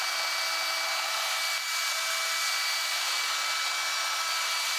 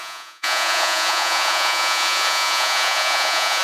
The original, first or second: first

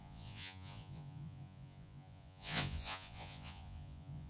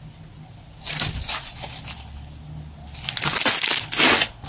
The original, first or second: second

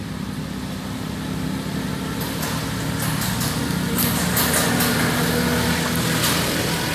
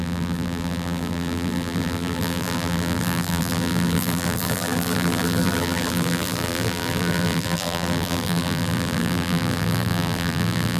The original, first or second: first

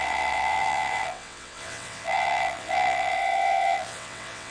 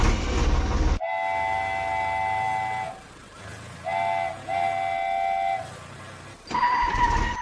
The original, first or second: second